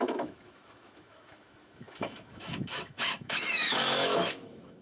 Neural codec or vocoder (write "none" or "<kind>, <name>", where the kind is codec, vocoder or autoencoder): autoencoder, DAC-VAE